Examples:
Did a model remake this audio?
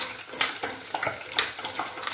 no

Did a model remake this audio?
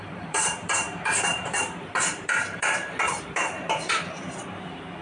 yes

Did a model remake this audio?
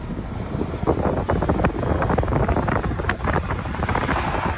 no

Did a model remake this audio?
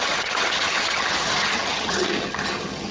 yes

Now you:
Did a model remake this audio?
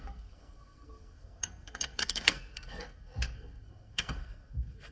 yes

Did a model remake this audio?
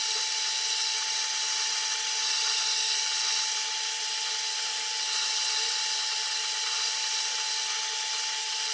no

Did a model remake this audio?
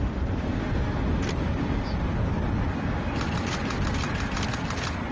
no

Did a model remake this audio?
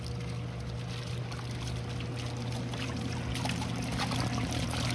no